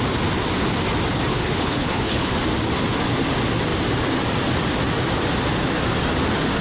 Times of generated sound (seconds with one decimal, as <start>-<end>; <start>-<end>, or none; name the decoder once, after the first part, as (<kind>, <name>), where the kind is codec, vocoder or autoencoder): 1.3-2.3 (codec, HILCodec)